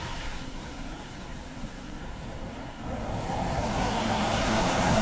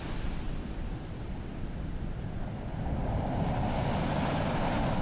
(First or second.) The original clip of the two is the second